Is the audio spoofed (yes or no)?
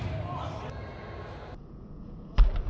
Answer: no